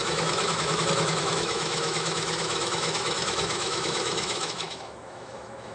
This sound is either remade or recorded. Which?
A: remade